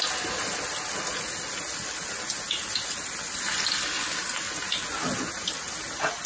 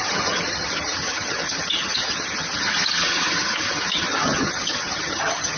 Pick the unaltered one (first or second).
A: first